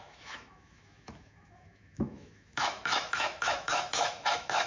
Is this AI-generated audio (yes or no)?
yes